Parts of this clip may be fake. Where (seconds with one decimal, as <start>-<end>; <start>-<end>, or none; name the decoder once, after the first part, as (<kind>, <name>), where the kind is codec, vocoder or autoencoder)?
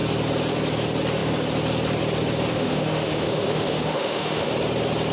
2.5-4.5 (autoencoder, DAC-VAE)